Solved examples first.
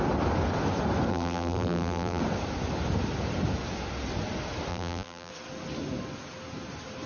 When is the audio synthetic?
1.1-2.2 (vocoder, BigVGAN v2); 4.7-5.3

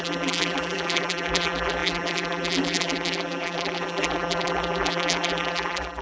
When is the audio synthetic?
0.0-6.0 (vocoder, BigVGAN v2)

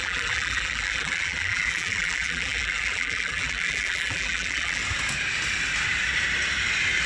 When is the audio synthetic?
0.0-4.8 (vocoder, BigVGAN v2)

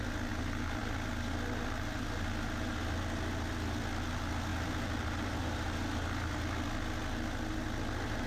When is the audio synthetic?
4.5-5.4 (vocoder, BigVGAN v2)

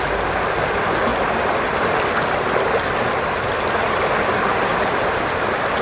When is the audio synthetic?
4.7-5.2 (vocoder, BigVGAN v2)